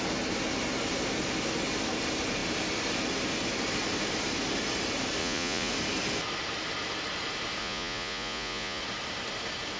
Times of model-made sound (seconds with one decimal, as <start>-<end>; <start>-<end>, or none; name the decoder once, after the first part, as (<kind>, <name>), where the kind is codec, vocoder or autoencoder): 5.2-5.7 (vocoder, Vocos); 7.6-8.8